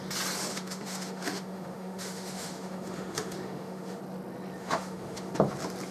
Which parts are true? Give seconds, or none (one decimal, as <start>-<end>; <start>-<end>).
0.0-0.5; 4.0-4.6; 5.3-5.9